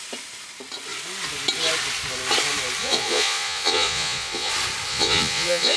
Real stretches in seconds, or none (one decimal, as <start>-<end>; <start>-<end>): 0.0-2.8; 4.5-4.9